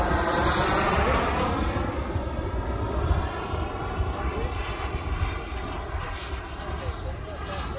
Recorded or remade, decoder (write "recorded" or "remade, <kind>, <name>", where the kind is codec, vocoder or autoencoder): recorded